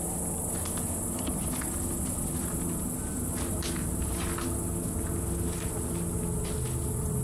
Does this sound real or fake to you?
real